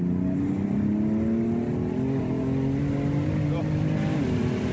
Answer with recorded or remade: recorded